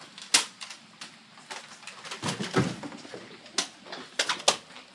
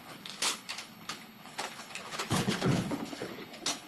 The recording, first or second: first